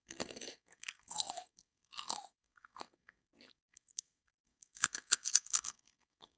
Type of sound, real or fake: fake